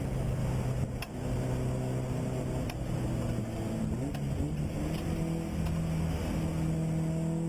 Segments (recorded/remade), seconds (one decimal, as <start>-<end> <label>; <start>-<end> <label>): 0.0-7.5 recorded